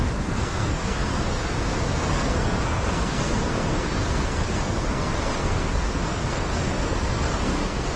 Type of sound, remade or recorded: remade